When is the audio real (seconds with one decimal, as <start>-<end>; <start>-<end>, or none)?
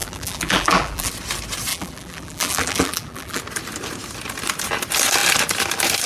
1.1-1.7; 3.4-6.1